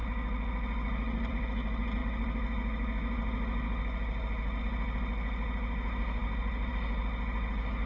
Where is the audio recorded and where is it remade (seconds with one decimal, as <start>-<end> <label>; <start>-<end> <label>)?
0.0-7.9 recorded